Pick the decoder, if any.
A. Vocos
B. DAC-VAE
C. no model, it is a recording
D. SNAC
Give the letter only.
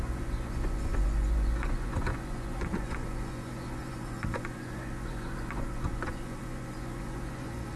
A